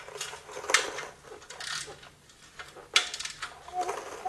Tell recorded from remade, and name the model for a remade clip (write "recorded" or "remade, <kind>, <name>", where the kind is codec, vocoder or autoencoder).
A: recorded